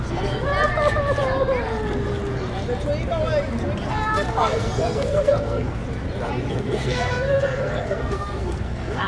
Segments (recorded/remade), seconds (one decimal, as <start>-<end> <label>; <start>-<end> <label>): 0.0-0.5 remade; 0.5-3.9 recorded; 3.9-5.8 remade; 5.8-6.5 recorded; 6.5-9.1 remade